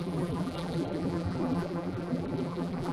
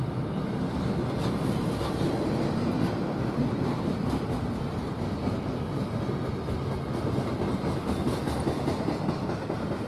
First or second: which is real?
second